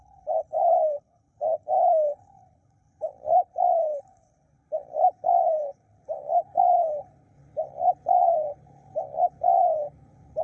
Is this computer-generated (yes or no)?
yes